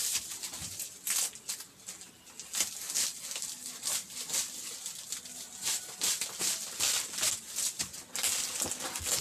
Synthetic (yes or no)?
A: no